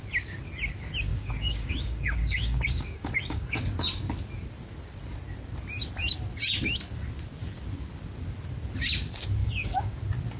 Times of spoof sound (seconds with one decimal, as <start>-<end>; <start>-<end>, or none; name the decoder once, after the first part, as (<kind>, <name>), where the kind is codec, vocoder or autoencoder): 1.1-3.6 (codec, DAC); 9.4-9.9